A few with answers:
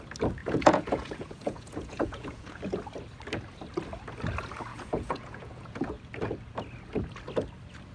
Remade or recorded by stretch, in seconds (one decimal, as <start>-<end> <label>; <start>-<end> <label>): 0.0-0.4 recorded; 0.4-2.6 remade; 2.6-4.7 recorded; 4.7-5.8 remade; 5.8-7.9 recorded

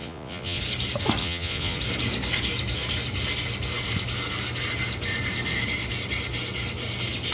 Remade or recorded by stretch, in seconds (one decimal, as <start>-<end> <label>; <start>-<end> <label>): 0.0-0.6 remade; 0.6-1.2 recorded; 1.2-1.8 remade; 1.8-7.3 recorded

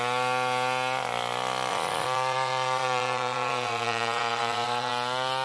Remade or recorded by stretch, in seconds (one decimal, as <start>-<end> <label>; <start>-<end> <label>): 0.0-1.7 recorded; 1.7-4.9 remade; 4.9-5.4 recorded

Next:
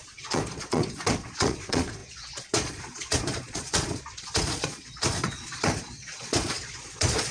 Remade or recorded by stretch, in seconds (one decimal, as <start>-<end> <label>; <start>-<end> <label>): 0.0-7.3 remade